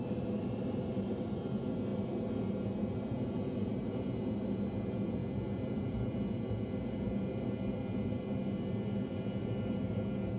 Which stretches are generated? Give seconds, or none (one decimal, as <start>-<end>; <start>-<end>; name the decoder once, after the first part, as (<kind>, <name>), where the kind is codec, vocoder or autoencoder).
none